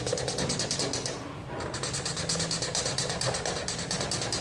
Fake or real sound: real